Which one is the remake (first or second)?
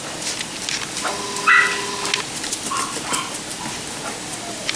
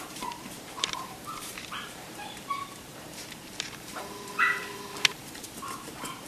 second